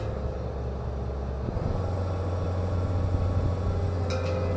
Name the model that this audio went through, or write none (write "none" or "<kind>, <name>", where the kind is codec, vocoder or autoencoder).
none